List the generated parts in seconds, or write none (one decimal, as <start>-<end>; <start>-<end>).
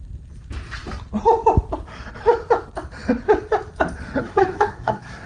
4.2-5.3